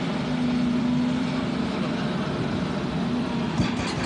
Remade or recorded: remade